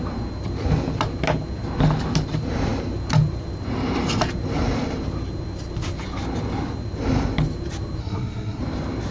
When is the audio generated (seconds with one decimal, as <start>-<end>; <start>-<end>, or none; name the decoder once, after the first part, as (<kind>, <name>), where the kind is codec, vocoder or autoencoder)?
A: 8.0-8.6 (codec, SNAC)